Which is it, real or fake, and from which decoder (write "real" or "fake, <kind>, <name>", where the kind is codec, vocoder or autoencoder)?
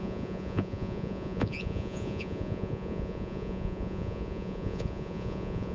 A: fake, vocoder, Vocos